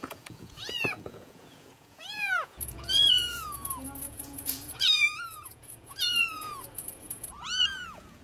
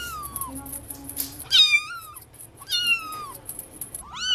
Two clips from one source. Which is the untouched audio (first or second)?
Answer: second